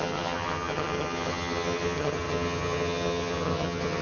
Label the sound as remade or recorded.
remade